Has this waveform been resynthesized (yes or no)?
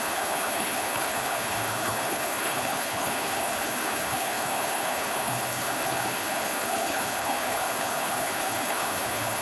yes